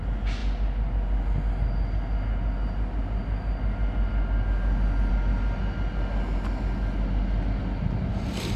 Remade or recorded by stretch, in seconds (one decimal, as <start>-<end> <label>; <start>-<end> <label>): 0.0-8.6 recorded